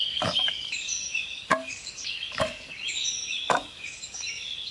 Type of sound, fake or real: fake